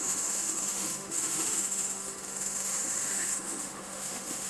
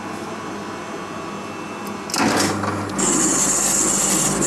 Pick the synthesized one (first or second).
first